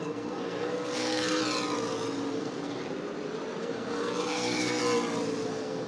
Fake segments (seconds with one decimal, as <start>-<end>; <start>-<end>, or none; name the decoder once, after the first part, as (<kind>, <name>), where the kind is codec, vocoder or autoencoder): 0.0-1.4 (codec, SNAC); 2.4-2.8; 3.6-4.8; 5.5-5.9